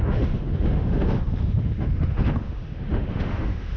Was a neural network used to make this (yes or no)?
yes